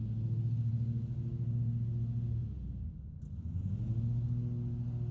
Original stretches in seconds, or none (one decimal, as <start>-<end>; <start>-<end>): 0.0-2.4; 3.1-5.1